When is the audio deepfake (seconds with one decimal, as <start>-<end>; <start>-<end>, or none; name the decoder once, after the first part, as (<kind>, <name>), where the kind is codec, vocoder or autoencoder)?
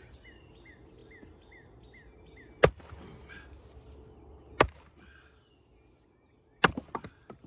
none